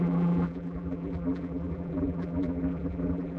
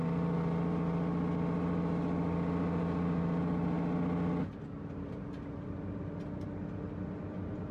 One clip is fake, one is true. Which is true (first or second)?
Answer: second